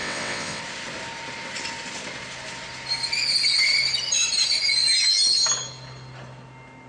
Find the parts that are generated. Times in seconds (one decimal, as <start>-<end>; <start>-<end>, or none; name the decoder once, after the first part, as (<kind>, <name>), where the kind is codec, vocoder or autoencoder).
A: 0.0-0.6 (vocoder, WaveNeXt)

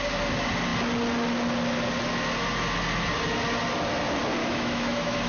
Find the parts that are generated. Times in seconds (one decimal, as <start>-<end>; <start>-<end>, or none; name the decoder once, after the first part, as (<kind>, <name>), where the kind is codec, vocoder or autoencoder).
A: 4.4-5.3 (autoencoder, DAC-VAE)

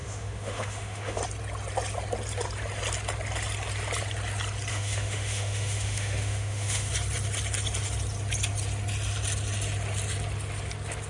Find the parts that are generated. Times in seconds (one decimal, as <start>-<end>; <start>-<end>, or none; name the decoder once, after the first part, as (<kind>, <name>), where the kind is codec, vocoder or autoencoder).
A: 0.0-1.2 (autoencoder, DAC-VAE); 4.7-6.9

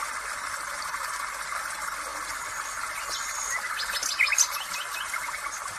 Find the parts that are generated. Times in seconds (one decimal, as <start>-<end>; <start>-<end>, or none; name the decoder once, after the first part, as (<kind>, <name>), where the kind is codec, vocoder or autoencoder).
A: none

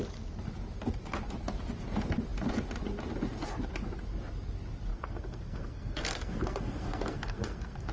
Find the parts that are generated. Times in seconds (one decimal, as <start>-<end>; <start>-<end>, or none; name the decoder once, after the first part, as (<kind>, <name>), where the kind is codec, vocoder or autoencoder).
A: 4.9-7.9 (codec, SNAC)

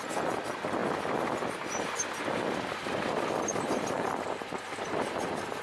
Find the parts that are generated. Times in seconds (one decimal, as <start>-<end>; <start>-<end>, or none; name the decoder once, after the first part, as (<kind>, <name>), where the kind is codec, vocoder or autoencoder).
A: 3.5-4.1 (vocoder, BigVGAN v2)